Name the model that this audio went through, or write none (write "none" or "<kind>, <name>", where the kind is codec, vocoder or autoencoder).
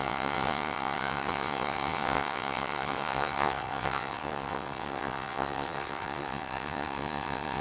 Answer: vocoder, WaveNeXt